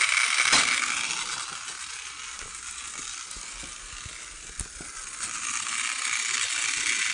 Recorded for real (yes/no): yes